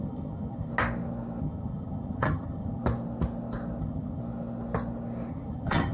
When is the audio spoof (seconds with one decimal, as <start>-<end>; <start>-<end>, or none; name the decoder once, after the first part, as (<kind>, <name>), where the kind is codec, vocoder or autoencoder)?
0.0-0.7 (vocoder, HiFi-GAN); 1.4-2.8; 3.8-4.2; 5.3-5.9